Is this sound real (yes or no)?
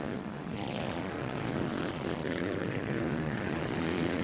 no